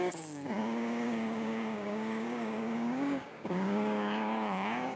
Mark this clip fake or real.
fake